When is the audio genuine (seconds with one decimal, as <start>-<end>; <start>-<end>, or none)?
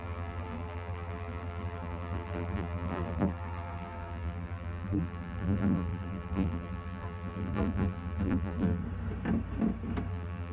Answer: 8.8-10.1